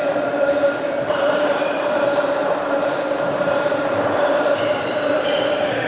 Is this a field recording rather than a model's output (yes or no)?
no